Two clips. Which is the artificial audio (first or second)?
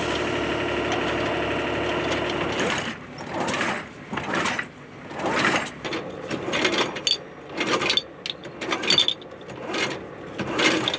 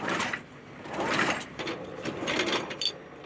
second